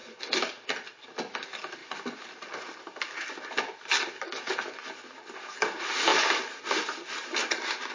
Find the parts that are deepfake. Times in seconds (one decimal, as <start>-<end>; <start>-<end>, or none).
none